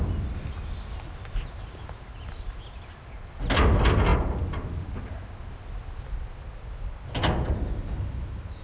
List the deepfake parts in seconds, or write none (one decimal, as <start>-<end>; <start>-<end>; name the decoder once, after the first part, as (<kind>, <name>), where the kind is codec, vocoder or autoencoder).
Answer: none